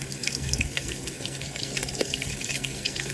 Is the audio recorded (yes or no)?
no